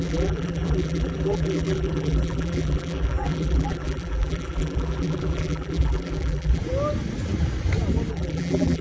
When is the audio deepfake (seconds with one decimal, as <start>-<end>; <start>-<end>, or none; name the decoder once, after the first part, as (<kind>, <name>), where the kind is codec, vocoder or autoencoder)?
0.0-6.6 (vocoder, BigVGAN v2); 8.1-8.8